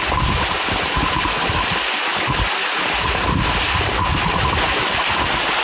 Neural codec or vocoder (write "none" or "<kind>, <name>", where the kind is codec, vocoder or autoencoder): none